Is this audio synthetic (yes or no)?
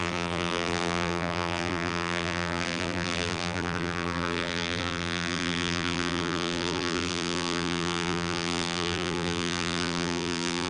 yes